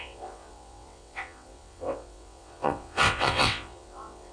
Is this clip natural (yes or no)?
no